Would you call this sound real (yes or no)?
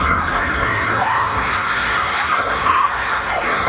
no